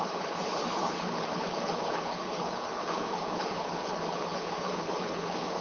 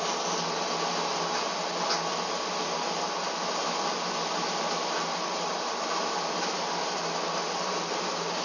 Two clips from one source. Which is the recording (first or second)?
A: second